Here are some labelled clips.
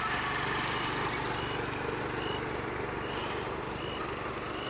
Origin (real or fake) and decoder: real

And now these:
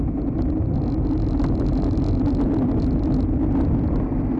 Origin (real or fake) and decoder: real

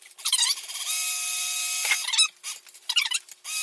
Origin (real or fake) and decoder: real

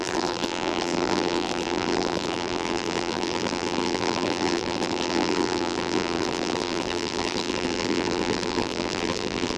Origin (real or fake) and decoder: fake, vocoder, BigVGAN v2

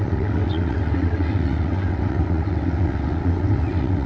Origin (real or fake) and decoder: fake, vocoder, WaveNeXt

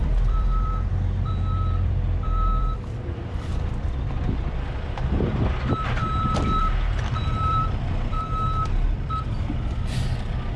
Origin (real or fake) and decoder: fake, vocoder, BigVGAN v2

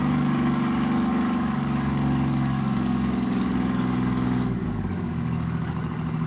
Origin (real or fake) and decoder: fake, codec, DAC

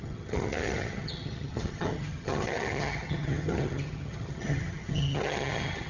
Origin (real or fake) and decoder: fake, vocoder, HiFi-GAN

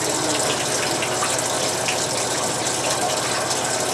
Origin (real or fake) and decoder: real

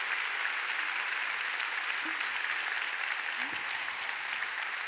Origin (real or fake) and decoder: real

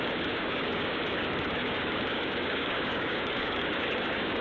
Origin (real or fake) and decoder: fake, codec, DAC